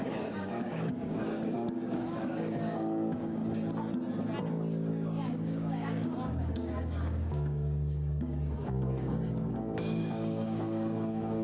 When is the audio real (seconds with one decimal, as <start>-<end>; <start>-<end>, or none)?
3.4-4.9